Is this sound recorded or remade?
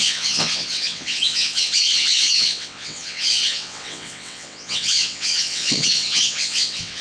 remade